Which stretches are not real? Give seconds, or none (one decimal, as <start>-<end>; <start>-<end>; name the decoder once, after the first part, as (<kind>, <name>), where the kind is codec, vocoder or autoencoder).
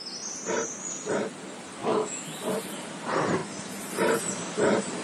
1.8-2.4 (autoencoder, DAC-VAE)